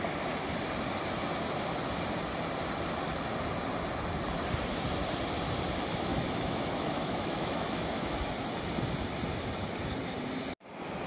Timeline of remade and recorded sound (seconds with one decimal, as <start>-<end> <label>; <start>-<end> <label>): 0.0-6.1 recorded; 6.1-8.3 remade; 8.3-11.1 recorded